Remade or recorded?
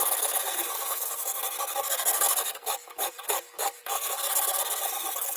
remade